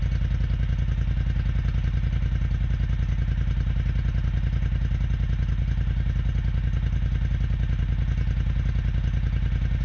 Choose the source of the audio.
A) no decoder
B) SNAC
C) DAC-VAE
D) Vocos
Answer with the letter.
A